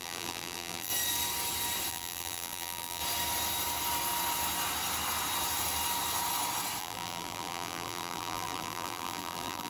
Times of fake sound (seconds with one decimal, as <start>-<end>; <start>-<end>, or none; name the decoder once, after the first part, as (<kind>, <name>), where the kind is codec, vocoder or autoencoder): 0.0-0.9 (vocoder, BigVGAN v2); 1.9-3.0; 6.8-9.7